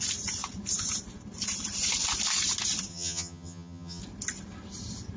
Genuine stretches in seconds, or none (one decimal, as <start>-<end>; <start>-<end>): 0.0-2.9; 4.0-5.2